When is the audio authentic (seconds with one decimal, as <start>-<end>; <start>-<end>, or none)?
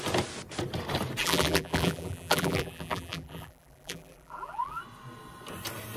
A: 0.0-1.2; 4.8-6.0